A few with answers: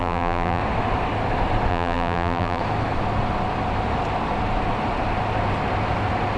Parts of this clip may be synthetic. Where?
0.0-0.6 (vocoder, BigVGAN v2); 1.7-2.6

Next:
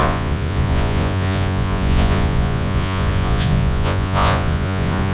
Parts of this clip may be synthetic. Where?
0.0-5.1 (vocoder, Vocos)

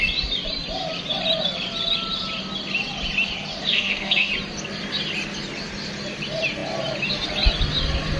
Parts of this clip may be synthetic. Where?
3.7-4.3 (codec, SNAC)

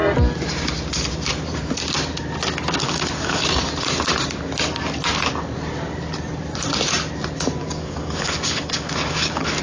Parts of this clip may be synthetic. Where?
2.8-3.4 (codec, DAC); 7.6-9.6